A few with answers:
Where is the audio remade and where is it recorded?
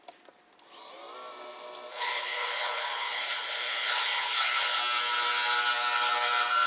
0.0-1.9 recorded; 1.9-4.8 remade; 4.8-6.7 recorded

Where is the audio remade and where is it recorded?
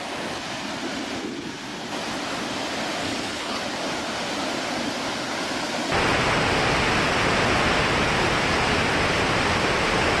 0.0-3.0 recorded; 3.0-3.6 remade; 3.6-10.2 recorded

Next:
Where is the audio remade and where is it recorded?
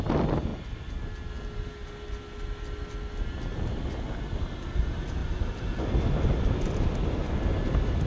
0.0-8.1 recorded